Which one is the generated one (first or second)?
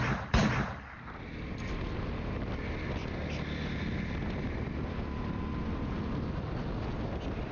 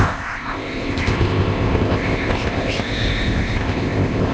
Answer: second